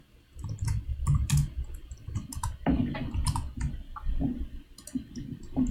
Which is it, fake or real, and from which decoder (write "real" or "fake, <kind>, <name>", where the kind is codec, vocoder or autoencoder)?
real